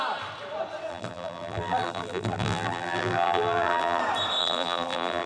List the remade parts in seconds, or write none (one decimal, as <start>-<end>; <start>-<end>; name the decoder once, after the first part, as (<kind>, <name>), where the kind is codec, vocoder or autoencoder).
0.9-4.0 (vocoder, BigVGAN v2); 4.4-5.3